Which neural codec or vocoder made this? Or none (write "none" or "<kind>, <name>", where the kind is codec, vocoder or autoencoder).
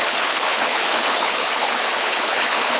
codec, HILCodec